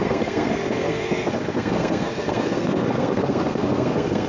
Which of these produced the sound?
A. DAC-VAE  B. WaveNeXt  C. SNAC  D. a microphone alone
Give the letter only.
C